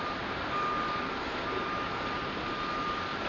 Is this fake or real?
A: real